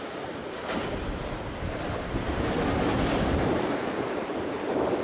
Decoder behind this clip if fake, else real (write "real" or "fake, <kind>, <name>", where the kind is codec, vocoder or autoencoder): fake, vocoder, BigVGAN v2